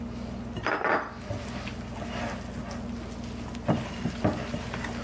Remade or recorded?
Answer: recorded